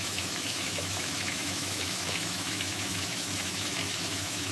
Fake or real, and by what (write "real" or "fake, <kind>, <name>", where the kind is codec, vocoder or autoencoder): fake, autoencoder, DAC-VAE